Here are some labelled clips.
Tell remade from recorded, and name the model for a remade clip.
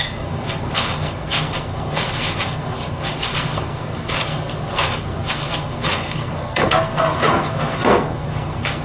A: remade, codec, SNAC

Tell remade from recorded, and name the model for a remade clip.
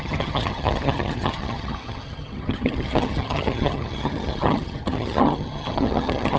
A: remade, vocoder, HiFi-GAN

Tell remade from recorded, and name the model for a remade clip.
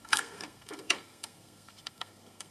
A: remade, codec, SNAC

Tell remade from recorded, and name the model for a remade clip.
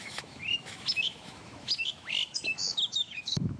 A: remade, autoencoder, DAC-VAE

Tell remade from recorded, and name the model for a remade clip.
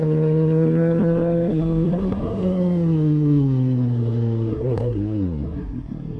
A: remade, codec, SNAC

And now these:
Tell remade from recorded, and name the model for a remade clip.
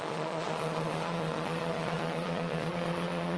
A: remade, vocoder, Vocos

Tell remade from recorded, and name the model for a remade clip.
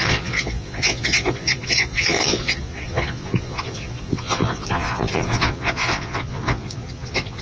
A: remade, vocoder, Vocos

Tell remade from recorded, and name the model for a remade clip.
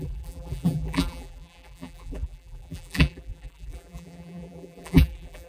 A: remade, vocoder, BigVGAN v2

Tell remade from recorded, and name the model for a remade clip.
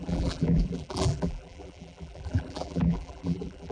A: remade, vocoder, BigVGAN v2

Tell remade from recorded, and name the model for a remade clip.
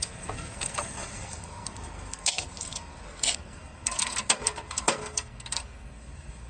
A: remade, codec, SNAC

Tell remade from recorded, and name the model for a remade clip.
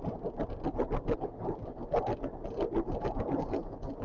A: recorded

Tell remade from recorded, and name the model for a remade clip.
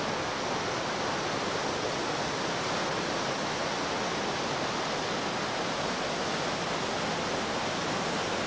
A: recorded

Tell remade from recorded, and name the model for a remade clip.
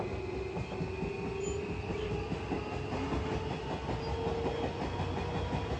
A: recorded